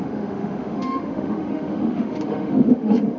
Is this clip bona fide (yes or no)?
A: no